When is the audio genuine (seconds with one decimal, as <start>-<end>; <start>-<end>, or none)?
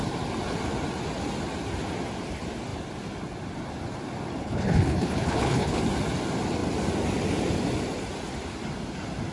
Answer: 0.0-4.4; 5.8-9.3